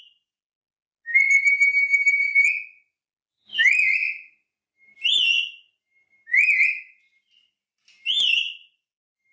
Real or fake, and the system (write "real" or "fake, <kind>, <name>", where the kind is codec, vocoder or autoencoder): real